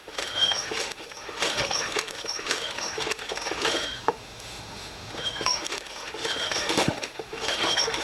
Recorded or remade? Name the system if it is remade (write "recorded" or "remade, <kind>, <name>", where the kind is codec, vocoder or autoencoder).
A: remade, autoencoder, DAC-VAE